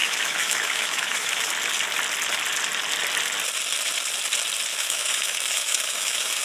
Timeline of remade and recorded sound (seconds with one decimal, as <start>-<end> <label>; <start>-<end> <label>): 0.0-1.5 remade; 1.5-4.7 recorded; 4.7-6.4 remade